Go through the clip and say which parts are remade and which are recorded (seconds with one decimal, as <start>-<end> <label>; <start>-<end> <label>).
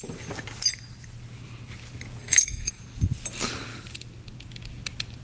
0.0-2.2 recorded; 2.2-2.8 remade; 2.8-5.2 recorded